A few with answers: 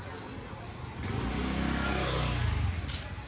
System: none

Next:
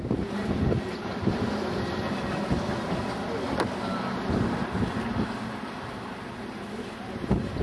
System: none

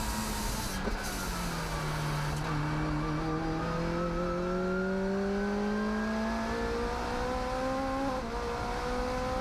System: none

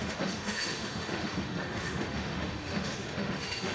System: autoencoder, DAC-VAE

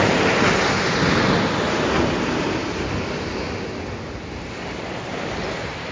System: none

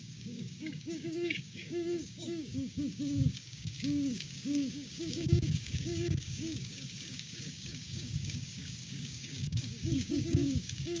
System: codec, DAC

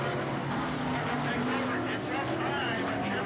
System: none